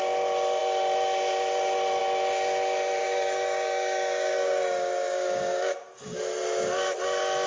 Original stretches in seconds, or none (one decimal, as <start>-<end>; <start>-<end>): 0.0-3.0; 6.2-7.5